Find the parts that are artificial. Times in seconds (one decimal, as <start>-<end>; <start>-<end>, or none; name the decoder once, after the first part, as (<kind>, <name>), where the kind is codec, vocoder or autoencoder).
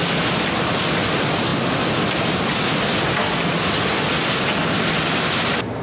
none